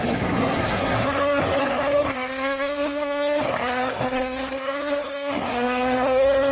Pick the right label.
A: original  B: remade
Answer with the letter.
B